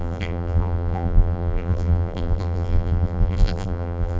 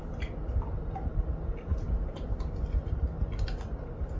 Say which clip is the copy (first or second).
first